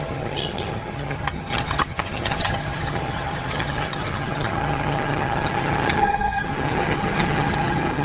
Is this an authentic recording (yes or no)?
no